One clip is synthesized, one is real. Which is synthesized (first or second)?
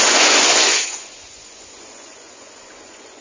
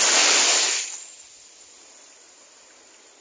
first